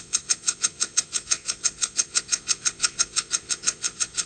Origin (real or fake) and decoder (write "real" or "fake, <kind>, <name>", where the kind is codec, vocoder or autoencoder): fake, vocoder, Vocos